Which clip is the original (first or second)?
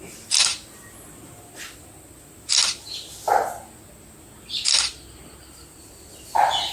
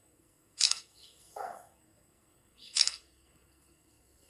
first